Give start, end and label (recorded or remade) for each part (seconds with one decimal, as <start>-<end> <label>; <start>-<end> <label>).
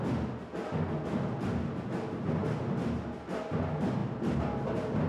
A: 0.0-5.1 recorded